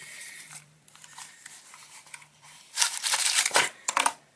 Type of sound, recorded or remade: remade